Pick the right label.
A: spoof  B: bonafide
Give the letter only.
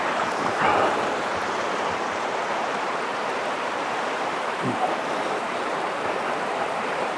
A